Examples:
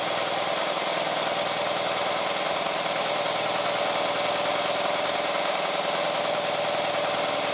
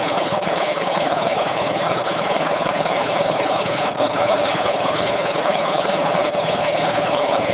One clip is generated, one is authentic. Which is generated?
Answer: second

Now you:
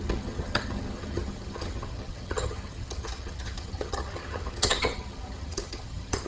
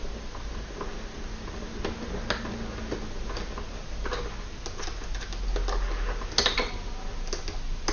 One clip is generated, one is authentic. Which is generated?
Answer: first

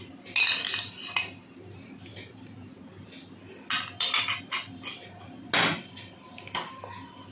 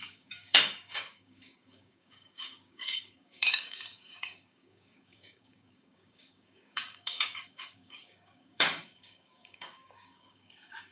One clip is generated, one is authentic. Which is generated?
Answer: second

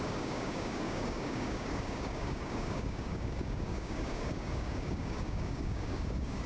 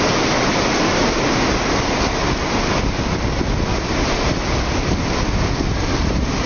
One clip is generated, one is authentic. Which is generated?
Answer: first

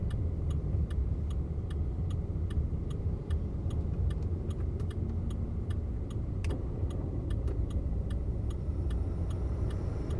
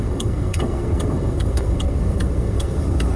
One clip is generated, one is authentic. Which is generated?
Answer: second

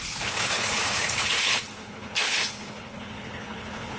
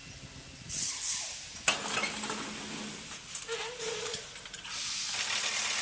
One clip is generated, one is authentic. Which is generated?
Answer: first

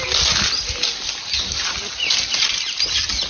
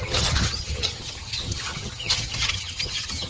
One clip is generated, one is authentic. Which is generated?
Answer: second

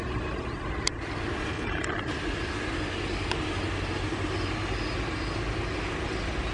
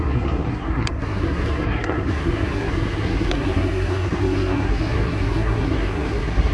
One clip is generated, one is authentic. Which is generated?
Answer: second